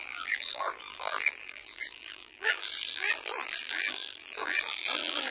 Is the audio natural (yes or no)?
no